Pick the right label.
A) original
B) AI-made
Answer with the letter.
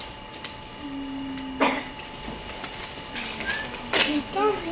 A